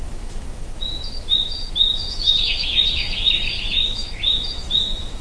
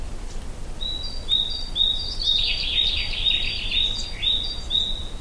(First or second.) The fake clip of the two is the first